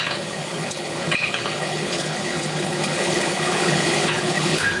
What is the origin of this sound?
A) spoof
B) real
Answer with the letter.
A